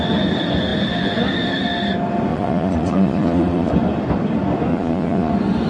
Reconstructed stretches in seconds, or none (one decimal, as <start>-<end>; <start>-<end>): 2.3-3.7; 4.7-5.3